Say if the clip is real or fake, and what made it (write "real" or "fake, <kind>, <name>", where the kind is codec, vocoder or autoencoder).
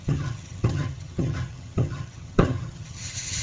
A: fake, vocoder, HiFi-GAN